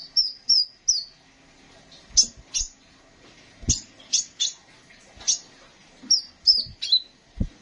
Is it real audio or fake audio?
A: real